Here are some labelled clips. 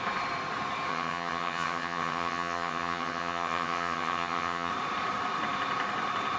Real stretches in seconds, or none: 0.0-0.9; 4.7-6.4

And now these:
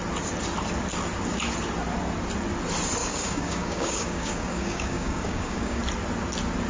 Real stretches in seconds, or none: 0.0-3.0; 5.8-6.7

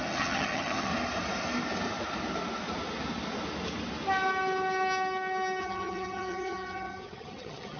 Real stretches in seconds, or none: 0.9-5.6

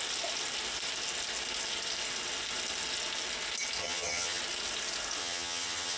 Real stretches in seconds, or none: 0.0-3.8; 4.4-5.2

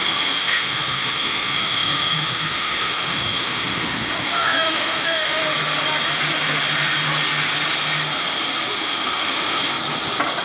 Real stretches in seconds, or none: 5.4-8.7; 9.6-10.4

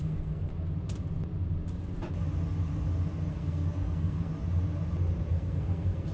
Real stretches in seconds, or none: 0.5-3.3; 4.3-5.3

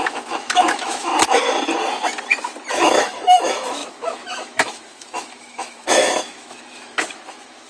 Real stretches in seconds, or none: 1.1-2.7